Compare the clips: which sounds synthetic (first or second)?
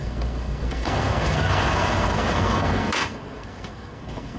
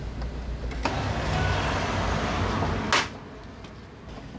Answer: first